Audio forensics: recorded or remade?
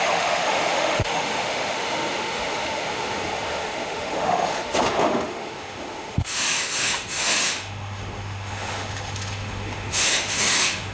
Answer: remade